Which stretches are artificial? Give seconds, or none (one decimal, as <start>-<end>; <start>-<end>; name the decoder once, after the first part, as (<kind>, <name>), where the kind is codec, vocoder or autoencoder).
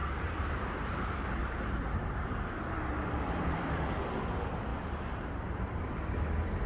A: 0.0-4.0 (vocoder, BigVGAN v2); 4.7-6.0